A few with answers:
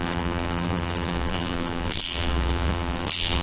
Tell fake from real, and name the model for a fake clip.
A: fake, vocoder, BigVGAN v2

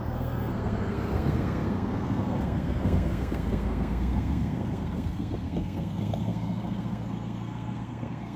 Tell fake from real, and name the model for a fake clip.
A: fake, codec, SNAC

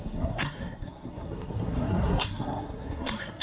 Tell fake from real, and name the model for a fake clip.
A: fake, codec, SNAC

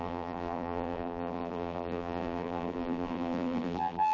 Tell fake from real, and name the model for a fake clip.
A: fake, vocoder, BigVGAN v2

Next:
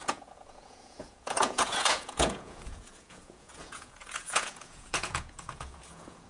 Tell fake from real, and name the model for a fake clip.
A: fake, vocoder, Vocos